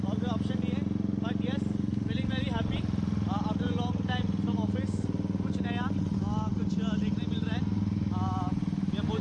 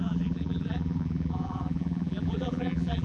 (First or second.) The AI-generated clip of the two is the second